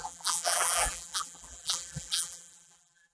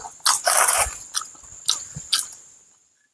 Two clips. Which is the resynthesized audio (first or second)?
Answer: first